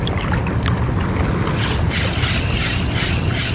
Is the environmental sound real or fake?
real